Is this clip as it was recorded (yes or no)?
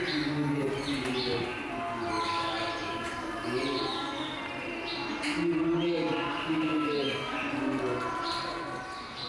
yes